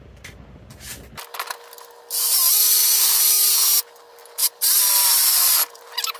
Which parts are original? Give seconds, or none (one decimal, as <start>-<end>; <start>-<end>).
0.0-4.4; 5.8-6.2